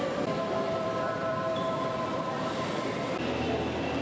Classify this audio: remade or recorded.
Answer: remade